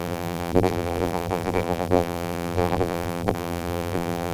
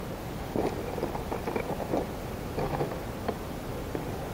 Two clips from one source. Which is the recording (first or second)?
second